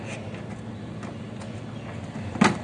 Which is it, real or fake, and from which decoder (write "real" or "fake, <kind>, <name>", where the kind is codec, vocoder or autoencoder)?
real